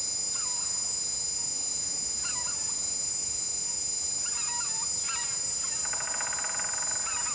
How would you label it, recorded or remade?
recorded